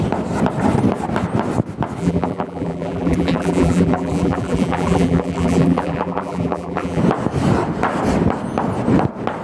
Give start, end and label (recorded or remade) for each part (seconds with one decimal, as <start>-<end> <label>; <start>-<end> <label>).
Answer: 0.0-2.0 recorded; 2.0-7.0 remade; 7.0-9.4 recorded